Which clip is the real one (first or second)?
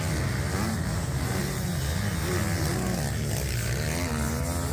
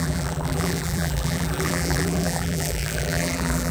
first